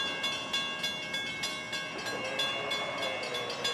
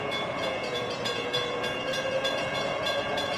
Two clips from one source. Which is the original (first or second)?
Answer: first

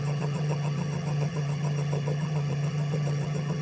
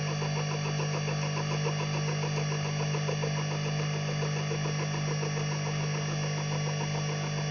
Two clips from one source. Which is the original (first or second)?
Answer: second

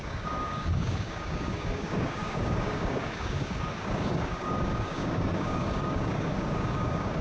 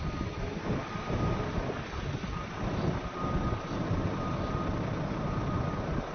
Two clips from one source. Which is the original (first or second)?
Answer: second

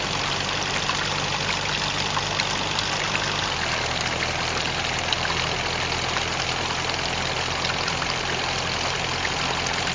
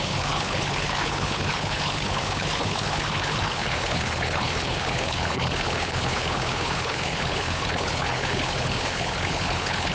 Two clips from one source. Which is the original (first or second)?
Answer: first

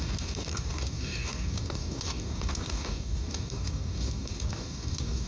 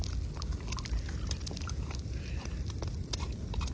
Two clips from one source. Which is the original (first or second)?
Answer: second